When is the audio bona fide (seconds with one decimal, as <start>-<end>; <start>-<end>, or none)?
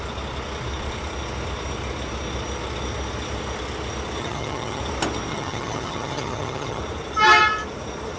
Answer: 0.0-4.2; 4.8-5.3; 6.8-8.2